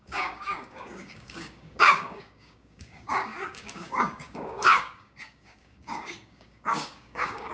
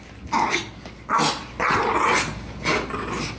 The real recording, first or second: second